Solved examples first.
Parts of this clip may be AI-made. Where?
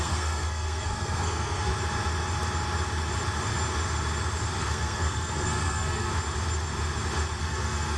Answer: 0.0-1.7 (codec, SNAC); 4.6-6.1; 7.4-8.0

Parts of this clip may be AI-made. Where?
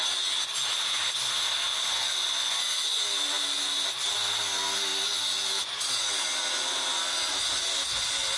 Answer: 1.7-3.0 (vocoder, Vocos)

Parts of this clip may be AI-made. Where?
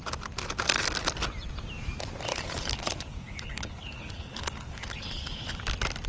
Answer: 2.3-5.6 (codec, HILCodec)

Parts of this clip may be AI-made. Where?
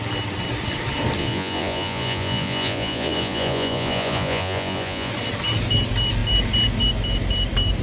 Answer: 1.2-5.1 (vocoder, Vocos)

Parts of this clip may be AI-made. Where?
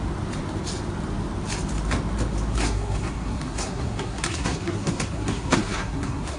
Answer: 2.5-6.4 (codec, SNAC)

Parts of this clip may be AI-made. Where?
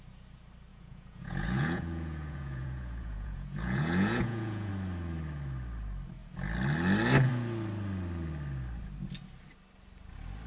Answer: 0.7-4.7 (vocoder, Vocos)